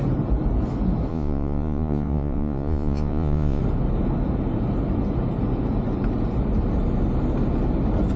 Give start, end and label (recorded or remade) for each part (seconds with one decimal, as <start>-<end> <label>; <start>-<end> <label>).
0.0-1.1 recorded; 1.1-3.6 remade; 3.6-8.2 recorded